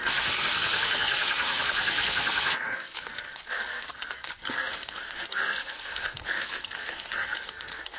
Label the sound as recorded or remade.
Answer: remade